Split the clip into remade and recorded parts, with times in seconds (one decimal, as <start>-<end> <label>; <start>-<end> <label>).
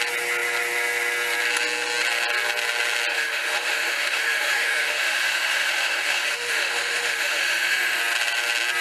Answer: 0.0-3.1 recorded; 3.1-8.0 remade; 8.0-8.8 recorded